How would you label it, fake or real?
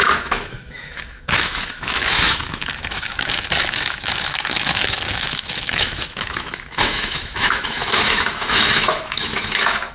fake